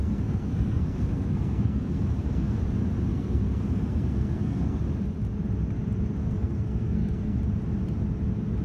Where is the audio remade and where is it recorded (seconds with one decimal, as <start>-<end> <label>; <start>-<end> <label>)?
0.0-2.6 remade; 2.6-3.1 recorded; 3.1-4.8 remade; 4.8-6.2 recorded; 6.2-7.4 remade; 7.4-8.6 recorded